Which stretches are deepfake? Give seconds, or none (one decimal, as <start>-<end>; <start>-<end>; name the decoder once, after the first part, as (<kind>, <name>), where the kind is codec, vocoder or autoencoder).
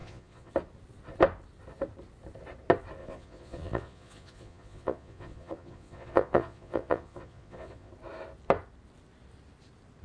0.0-0.5 (vocoder, Vocos); 3.0-7.9